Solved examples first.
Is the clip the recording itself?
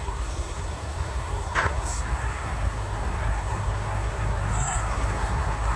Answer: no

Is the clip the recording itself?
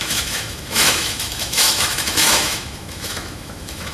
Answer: no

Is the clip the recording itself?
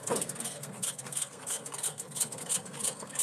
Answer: no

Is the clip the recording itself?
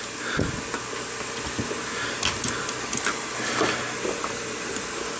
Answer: yes